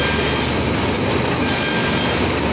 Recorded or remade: recorded